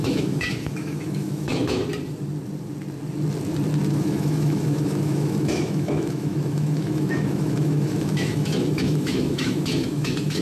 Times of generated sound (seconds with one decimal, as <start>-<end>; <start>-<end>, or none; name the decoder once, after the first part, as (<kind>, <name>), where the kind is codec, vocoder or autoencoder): 0.0-1.8 (autoencoder, DAC-VAE); 3.9-10.4